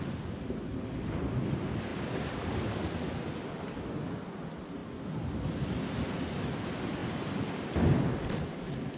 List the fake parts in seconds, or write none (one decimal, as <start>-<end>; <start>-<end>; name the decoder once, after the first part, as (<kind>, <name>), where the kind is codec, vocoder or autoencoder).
none